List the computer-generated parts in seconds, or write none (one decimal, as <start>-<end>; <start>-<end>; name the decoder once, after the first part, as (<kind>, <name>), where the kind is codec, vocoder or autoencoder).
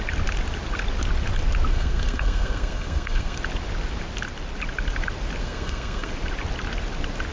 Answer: 1.7-3.4 (codec, SNAC); 5.4-6.1